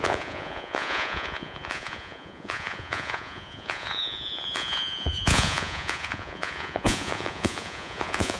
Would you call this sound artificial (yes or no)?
yes